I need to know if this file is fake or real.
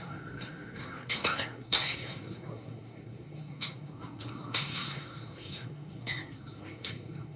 fake